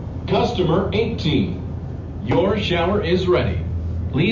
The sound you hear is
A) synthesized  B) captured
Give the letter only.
B